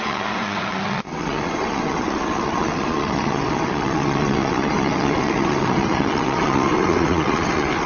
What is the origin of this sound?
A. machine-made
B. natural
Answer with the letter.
A